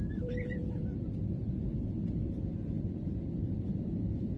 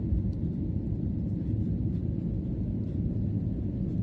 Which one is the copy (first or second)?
first